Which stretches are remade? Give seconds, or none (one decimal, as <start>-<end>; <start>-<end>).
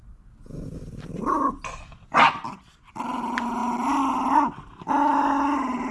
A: 0.0-1.2